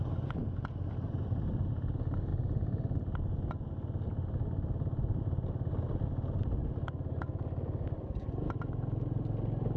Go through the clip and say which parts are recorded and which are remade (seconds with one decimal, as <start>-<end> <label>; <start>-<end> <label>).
0.0-9.8 recorded